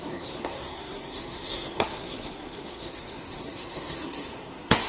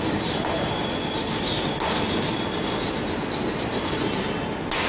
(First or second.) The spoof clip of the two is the first